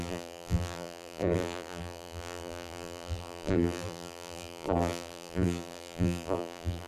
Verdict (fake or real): fake